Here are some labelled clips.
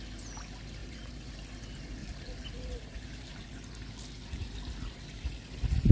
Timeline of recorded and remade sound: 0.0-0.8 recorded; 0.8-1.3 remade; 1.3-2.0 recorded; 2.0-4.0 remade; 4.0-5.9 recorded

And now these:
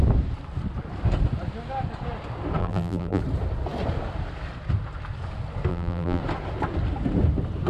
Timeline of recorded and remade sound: 0.0-2.6 recorded; 2.6-3.2 remade; 3.2-5.7 recorded; 5.7-6.2 remade; 6.2-7.7 recorded